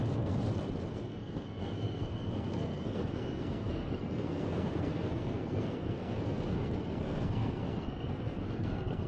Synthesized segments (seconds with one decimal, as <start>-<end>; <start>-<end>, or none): 0.0-0.4; 0.9-9.1